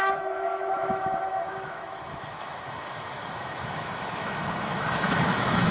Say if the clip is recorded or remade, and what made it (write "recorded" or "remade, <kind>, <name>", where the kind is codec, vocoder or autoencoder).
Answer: remade, autoencoder, DAC-VAE